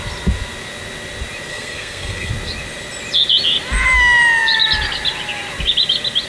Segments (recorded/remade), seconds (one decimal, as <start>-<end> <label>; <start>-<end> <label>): 0.0-1.5 recorded; 1.5-2.3 remade; 2.3-6.3 recorded